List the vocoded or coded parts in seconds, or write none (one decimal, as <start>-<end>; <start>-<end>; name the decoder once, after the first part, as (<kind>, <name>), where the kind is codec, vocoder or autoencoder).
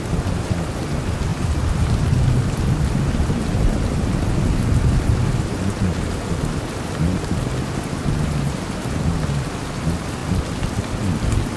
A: none